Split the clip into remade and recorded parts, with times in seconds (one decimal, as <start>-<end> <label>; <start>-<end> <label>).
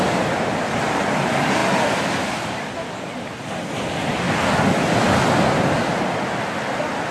0.0-1.6 recorded; 1.6-2.5 remade; 2.5-7.1 recorded